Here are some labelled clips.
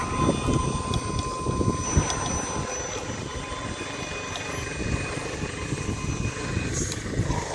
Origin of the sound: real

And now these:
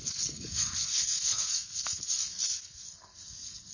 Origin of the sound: fake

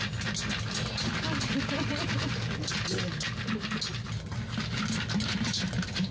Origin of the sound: real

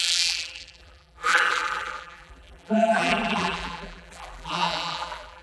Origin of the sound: fake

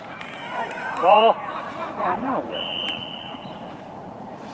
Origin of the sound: fake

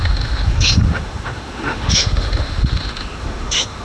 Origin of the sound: fake